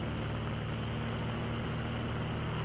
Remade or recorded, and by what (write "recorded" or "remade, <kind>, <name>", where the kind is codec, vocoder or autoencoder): recorded